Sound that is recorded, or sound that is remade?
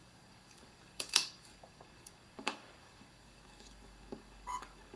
remade